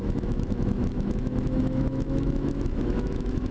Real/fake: fake